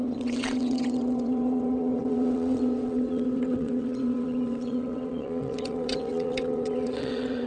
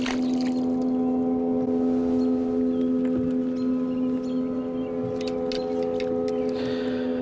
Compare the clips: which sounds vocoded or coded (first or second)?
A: first